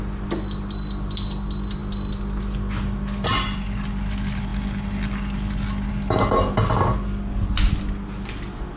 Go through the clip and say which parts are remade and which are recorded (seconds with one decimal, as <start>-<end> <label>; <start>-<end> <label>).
0.0-8.8 recorded